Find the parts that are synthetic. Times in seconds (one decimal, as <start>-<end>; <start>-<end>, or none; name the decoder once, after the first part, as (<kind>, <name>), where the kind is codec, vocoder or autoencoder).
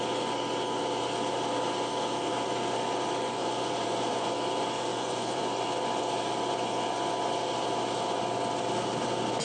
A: 3.4-4.3 (vocoder, Vocos); 4.9-5.4